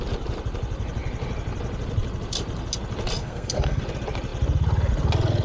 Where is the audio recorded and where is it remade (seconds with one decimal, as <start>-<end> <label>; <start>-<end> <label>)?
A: 0.0-3.2 recorded; 3.2-3.8 remade; 3.8-5.4 recorded